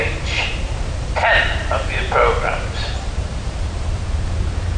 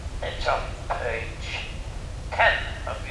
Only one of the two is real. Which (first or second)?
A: second